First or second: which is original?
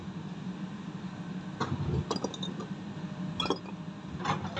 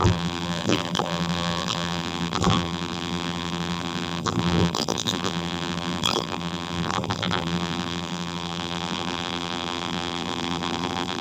first